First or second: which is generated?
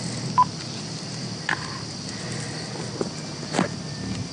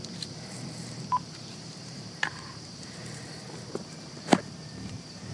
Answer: second